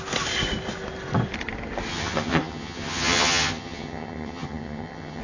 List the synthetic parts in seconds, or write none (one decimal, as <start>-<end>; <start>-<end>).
1.9-5.2